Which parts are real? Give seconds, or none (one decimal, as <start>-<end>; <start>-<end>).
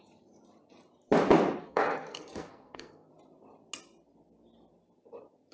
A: 0.0-1.6; 3.1-5.5